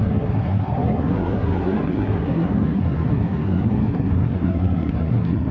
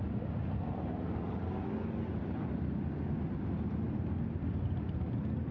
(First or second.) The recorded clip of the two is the second